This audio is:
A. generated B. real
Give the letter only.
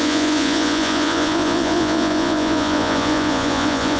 A